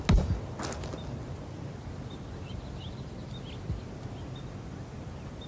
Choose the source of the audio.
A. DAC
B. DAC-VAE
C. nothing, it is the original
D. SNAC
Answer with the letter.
C